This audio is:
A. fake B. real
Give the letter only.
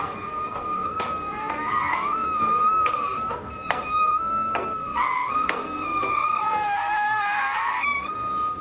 A